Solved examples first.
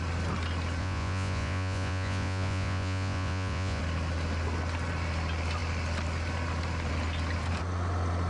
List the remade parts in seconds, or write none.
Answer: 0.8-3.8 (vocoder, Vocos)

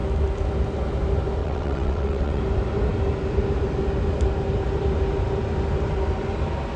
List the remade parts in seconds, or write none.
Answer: 1.4-2.4 (vocoder, WaveNeXt)

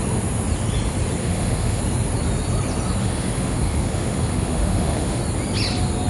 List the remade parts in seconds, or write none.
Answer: 1.2-1.8 (autoencoder, DAC-VAE); 3.0-5.2